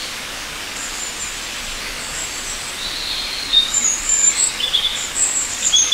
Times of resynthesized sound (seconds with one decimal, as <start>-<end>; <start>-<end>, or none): 0.0-1.0; 1.8-2.2; 3.4-5.9